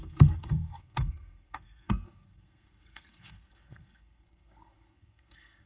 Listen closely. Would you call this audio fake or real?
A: fake